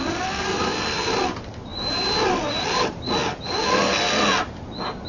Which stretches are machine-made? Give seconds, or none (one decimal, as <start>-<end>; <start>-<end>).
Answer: none